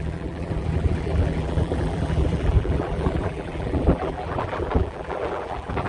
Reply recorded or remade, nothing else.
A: remade